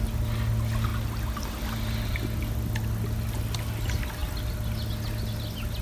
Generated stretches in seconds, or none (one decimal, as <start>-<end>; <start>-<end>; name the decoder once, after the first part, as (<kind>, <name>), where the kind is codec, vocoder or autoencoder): none